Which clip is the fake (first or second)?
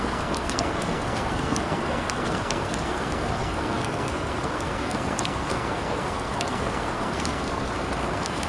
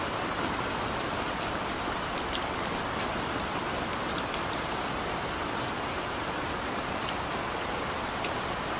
first